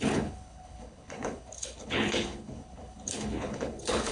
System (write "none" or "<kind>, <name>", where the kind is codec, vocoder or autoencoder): codec, HILCodec